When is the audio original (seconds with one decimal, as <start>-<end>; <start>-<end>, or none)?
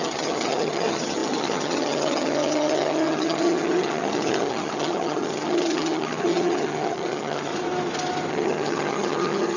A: 7.5-8.3